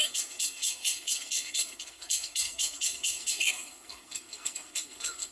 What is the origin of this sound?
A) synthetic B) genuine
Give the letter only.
A